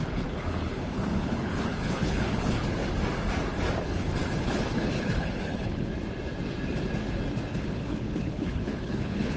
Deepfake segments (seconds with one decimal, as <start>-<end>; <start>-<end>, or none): 0.0-2.8; 3.8-5.9; 7.5-9.4

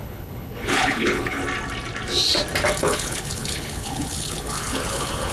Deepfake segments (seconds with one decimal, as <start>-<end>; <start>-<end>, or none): 0.0-1.4; 2.8-5.3

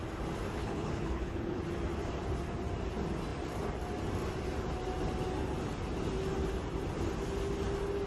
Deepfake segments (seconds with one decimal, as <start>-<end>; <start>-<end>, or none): 0.6-1.6